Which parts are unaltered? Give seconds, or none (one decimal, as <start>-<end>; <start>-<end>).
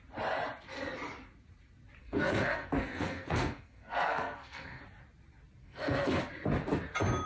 0.0-2.0; 4.8-5.6; 6.2-7.3